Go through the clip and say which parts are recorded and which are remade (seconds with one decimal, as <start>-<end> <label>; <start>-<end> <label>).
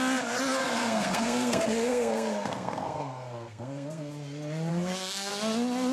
0.0-0.6 recorded; 0.6-4.1 remade; 4.1-4.7 recorded; 4.7-5.3 remade; 5.3-5.9 recorded